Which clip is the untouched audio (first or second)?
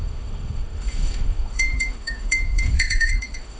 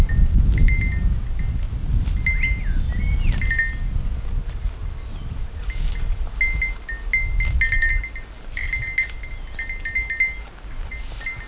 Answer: second